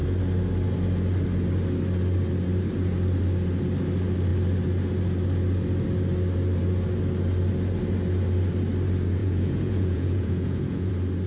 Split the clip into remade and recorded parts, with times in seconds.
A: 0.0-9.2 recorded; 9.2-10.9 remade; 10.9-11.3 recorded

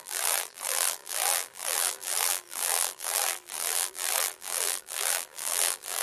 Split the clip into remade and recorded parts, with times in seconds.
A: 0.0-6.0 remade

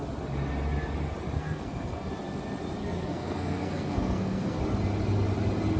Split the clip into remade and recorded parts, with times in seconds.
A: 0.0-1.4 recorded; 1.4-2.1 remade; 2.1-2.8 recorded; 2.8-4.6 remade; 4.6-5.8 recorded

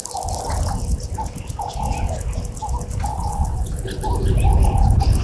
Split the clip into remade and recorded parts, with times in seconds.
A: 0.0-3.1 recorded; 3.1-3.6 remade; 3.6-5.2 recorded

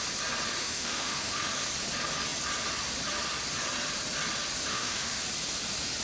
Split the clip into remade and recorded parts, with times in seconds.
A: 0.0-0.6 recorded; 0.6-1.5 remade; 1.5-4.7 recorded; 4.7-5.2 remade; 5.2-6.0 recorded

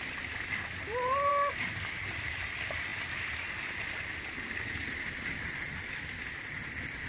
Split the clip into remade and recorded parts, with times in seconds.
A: 0.0-7.1 recorded

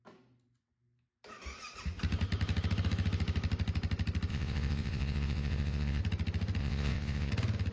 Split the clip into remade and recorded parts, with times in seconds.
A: 0.0-4.3 recorded; 4.3-6.0 remade; 6.0-6.6 recorded; 6.6-7.3 remade; 7.3-7.7 recorded

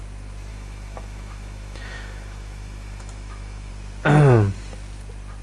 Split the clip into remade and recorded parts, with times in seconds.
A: 0.0-0.5 recorded; 0.5-3.7 remade; 3.7-5.4 recorded